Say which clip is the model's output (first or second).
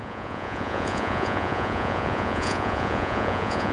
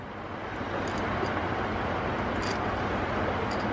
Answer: first